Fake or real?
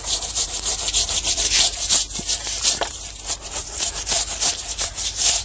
fake